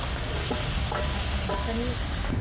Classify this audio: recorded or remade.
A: recorded